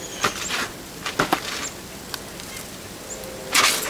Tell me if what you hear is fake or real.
real